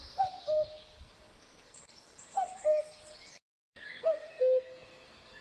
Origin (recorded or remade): remade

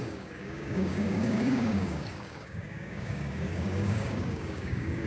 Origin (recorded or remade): remade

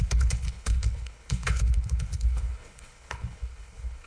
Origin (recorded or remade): remade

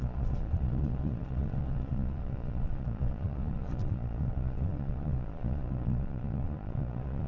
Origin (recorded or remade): remade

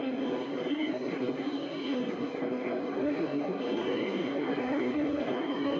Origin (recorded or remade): remade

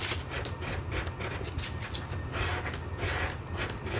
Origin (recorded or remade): recorded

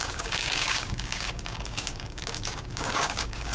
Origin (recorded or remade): remade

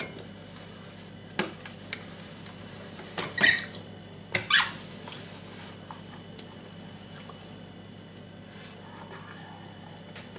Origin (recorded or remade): recorded